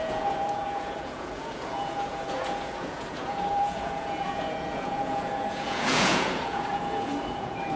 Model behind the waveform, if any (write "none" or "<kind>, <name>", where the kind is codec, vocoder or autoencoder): vocoder, Vocos